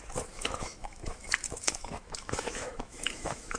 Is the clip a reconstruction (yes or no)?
yes